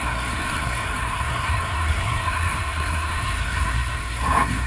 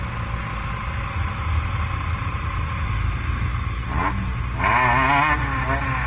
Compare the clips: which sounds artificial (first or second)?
first